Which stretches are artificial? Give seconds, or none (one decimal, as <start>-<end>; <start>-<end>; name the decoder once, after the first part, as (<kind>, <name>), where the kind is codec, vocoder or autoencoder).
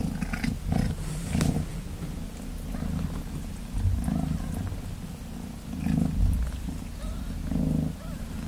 none